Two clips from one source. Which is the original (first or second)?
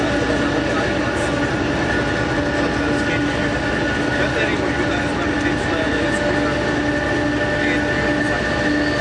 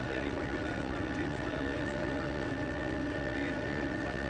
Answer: first